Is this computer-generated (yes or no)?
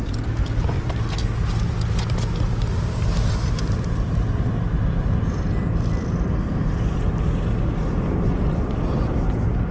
no